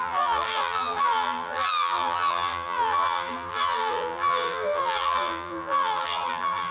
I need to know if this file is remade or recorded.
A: remade